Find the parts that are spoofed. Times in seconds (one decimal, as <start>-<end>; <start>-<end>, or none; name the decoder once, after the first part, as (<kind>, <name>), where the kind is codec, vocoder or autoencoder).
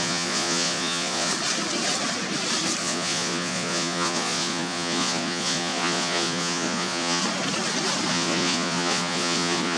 0.0-1.3 (vocoder, Vocos); 2.8-7.2; 8.1-9.8